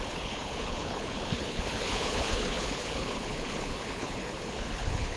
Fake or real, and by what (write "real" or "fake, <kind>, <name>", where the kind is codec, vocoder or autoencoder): fake, codec, HILCodec